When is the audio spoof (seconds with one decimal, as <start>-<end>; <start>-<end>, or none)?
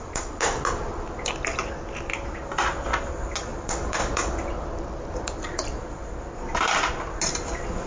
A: 3.5-6.1